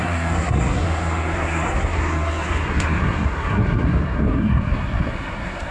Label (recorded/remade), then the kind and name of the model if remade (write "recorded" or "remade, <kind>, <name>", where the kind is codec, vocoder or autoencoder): remade, codec, SNAC